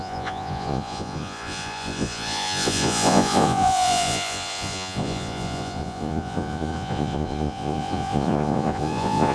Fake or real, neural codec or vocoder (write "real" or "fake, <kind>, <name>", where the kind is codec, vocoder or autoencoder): fake, vocoder, Vocos